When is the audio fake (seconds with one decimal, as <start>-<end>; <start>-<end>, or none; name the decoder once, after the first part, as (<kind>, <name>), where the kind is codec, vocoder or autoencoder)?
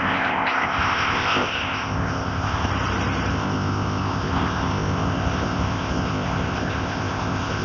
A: 0.0-2.7 (codec, ZipCodec); 3.3-7.6